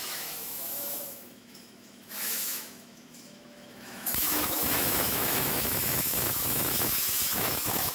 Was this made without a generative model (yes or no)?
no